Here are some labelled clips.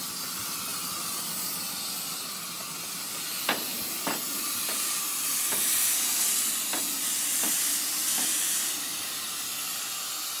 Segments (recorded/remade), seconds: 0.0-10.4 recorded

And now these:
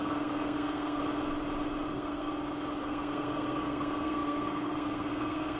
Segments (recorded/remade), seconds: 0.0-1.0 remade; 1.0-1.9 recorded; 1.9-2.3 remade; 2.3-2.8 recorded; 2.8-5.6 remade

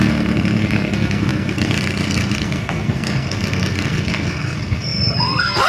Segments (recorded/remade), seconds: 0.0-5.7 remade

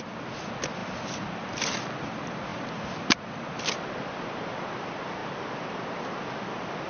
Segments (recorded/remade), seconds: 0.0-6.9 recorded

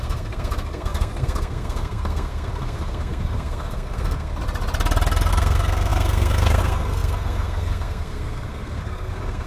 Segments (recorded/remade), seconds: 0.0-4.3 remade; 4.3-5.3 recorded; 5.3-9.5 remade

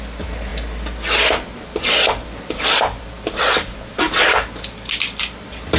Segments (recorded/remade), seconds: 0.0-5.8 recorded